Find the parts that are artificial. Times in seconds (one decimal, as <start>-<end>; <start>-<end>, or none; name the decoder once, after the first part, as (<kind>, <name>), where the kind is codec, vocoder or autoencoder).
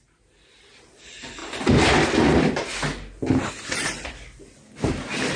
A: none